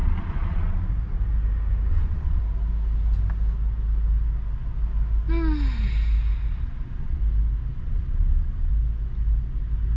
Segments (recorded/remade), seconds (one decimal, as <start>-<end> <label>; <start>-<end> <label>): 0.0-0.9 remade; 0.9-1.9 recorded; 1.9-2.4 remade; 2.4-6.5 recorded; 6.5-7.2 remade; 7.2-7.8 recorded; 7.8-8.7 remade; 8.7-10.0 recorded